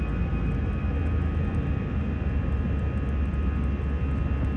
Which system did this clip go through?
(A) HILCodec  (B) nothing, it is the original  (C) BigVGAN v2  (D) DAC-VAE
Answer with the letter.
B